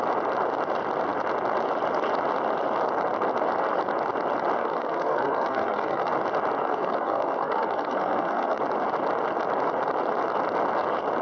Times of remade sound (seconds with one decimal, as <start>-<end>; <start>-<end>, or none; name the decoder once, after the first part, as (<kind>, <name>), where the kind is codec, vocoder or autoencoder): 4.6-6.1 (codec, SNAC); 6.6-8.6